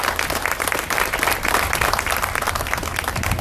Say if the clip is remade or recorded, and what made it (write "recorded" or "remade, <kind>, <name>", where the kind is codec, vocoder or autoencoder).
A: recorded